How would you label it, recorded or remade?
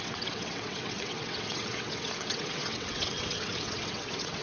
remade